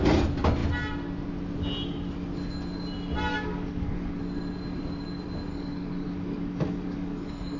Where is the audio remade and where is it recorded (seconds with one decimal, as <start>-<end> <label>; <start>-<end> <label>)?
0.0-3.3 recorded; 3.3-4.2 remade; 4.2-5.5 recorded; 5.5-7.6 remade